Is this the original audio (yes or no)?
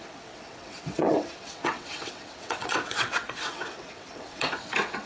no